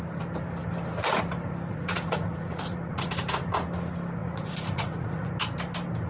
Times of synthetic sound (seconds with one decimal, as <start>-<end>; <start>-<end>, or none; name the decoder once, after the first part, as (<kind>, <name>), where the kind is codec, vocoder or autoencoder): 1.7-3.1 (vocoder, Vocos); 4.2-5.3